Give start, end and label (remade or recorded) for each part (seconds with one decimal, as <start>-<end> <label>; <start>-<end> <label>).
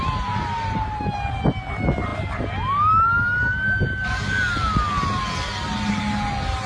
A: 0.0-6.7 recorded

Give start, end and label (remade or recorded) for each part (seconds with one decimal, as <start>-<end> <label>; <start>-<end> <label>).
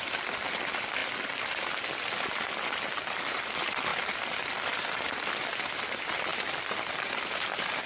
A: 0.0-1.0 remade; 1.0-3.3 recorded; 3.3-7.9 remade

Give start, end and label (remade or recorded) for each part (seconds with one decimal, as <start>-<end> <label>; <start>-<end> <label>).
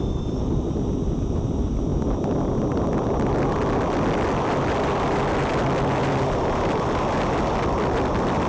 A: 0.0-1.9 remade; 1.9-4.5 recorded; 4.5-5.5 remade; 5.5-6.1 recorded; 6.1-8.5 remade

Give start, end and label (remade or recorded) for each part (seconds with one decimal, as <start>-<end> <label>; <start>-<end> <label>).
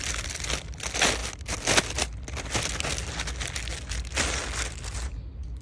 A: 0.0-5.6 recorded